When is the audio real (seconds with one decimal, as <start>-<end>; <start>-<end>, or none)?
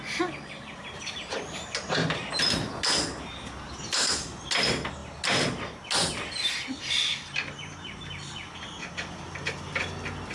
0.0-10.3